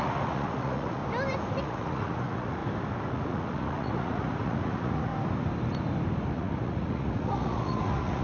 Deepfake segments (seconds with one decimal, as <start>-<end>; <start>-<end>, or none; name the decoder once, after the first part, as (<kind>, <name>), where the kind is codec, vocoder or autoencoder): 0.0-1.0 (vocoder, Vocos); 1.6-2.6; 3.1-5.1; 6.3-8.2